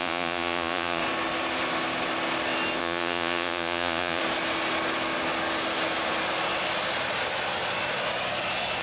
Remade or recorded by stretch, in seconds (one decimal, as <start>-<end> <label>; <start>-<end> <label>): 0.0-1.0 remade; 1.0-2.8 recorded; 2.8-4.2 remade; 4.2-8.8 recorded